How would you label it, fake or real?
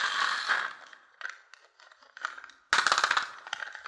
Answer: real